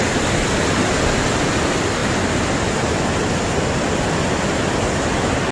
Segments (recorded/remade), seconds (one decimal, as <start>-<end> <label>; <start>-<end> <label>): 0.0-5.5 recorded